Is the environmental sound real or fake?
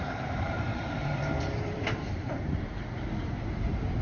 fake